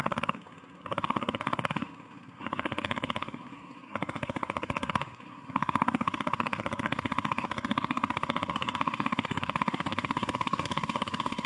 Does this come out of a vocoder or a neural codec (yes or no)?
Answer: yes